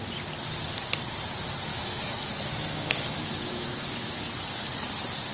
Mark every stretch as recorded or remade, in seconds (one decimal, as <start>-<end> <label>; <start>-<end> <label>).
0.0-1.7 recorded; 1.7-4.2 remade; 4.2-5.3 recorded